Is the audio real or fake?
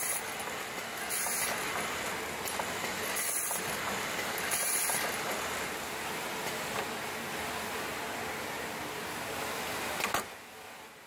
real